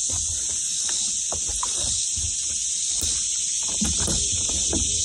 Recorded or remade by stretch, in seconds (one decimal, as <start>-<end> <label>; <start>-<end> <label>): 0.0-5.0 recorded